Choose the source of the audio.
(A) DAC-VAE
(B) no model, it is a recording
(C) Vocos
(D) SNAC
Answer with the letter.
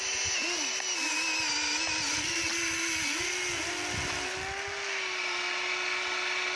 B